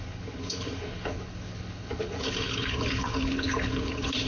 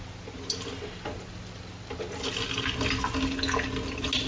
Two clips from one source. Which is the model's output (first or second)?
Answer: first